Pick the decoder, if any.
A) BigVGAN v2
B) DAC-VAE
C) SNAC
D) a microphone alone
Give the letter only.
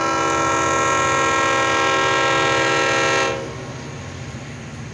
D